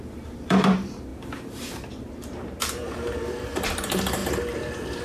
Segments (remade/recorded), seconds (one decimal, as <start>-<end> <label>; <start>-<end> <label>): 0.0-4.2 remade; 4.2-5.0 recorded